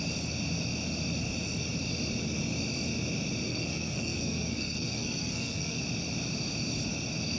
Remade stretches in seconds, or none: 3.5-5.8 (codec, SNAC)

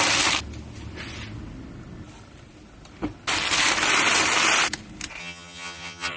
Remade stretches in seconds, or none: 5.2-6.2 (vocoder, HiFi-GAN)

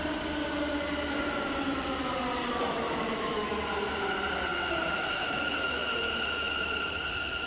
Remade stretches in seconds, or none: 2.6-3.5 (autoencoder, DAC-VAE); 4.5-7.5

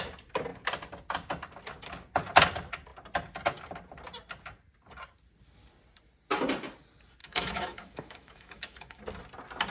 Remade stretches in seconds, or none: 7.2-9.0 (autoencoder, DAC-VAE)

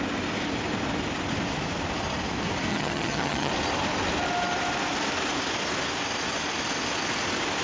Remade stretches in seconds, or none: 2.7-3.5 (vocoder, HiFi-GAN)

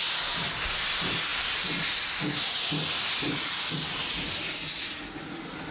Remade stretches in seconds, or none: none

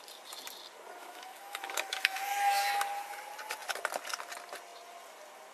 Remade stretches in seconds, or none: 1.0-2.7 (autoencoder, DAC-VAE)

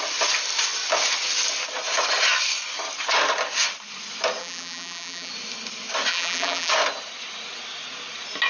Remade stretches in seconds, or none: 4.4-5.3 (vocoder, BigVGAN v2); 6.1-6.7